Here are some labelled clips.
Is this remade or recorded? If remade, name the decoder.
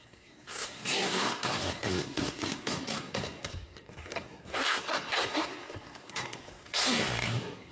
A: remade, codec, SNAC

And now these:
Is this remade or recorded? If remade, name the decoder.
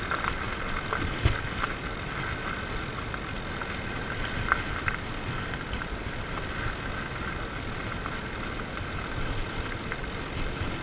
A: recorded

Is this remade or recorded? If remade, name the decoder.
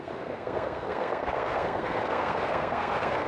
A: remade, codec, SNAC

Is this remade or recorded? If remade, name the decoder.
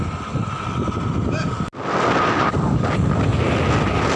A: recorded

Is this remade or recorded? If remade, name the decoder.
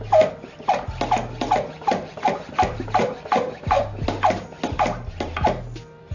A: recorded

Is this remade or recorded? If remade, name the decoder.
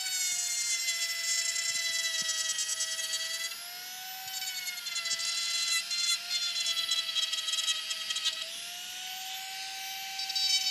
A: recorded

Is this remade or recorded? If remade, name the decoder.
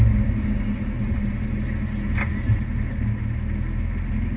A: recorded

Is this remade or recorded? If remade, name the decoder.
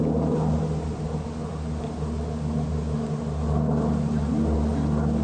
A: recorded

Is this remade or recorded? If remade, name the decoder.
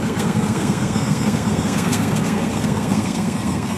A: remade, codec, SNAC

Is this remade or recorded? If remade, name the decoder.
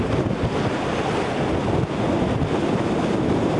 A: recorded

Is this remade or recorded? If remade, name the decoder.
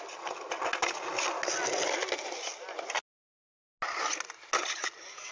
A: recorded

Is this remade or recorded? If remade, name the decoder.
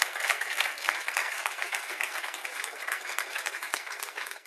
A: remade, codec, SNAC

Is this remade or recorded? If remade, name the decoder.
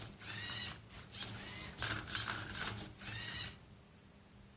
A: recorded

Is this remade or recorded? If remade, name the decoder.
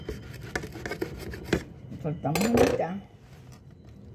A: recorded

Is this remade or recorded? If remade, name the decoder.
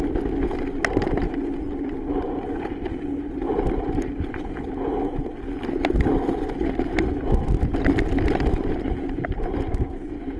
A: recorded